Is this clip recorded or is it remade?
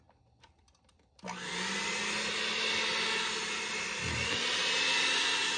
recorded